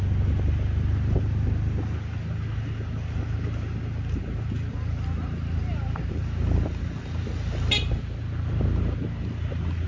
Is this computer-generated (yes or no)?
no